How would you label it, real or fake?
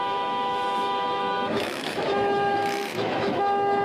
fake